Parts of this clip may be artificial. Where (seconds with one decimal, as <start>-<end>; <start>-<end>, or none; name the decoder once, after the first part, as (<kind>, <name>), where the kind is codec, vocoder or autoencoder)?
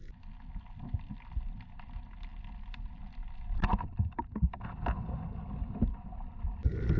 none